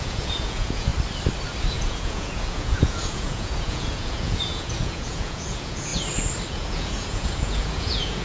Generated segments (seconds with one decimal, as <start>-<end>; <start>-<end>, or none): 0.0-0.9; 1.7-5.9; 6.5-8.2